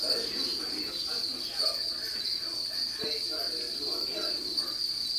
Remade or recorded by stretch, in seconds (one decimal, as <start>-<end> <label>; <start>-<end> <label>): 0.0-5.2 recorded